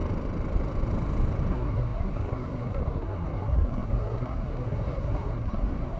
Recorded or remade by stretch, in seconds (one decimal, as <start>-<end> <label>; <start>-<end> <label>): 0.0-1.5 recorded; 1.5-6.0 remade